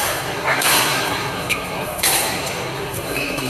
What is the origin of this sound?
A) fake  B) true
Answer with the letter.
A